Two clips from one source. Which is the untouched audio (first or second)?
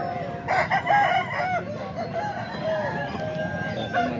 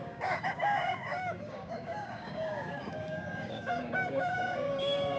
first